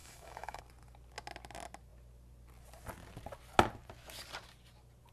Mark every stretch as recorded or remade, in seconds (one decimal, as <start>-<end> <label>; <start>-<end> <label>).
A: 0.0-0.6 remade; 0.6-5.1 recorded